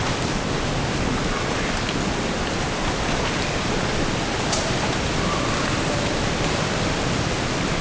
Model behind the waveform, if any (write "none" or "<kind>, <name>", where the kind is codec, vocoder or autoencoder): none